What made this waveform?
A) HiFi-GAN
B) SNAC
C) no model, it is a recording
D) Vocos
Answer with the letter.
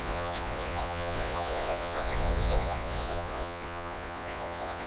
D